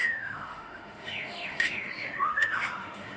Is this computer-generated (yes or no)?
yes